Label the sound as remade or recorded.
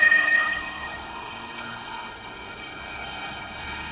remade